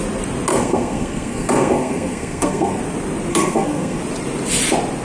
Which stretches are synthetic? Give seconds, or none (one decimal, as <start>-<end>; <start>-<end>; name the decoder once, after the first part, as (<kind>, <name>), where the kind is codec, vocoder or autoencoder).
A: 0.5-2.8 (codec, SNAC); 3.3-4.0